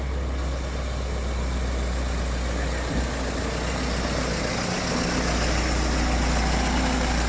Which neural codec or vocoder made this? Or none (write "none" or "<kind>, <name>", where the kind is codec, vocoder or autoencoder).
none